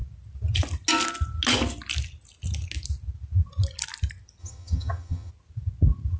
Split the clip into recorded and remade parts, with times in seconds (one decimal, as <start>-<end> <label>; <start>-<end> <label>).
0.0-4.4 recorded; 4.4-5.3 remade; 5.3-6.2 recorded